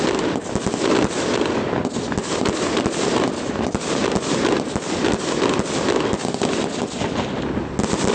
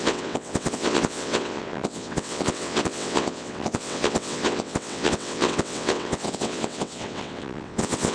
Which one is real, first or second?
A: first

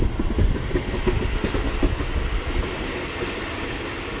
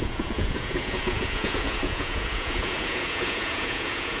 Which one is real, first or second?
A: first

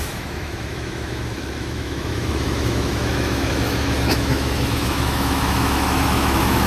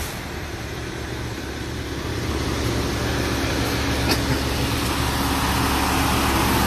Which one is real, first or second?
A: second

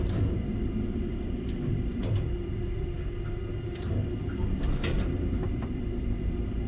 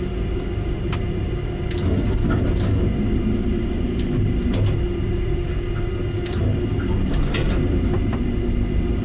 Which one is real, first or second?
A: second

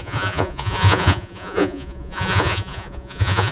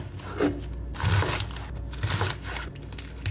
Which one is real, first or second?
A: second